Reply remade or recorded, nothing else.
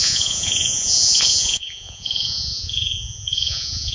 remade